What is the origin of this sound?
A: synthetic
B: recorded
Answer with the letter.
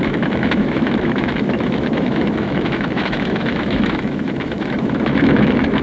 A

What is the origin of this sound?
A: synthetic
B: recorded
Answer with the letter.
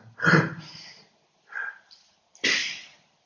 B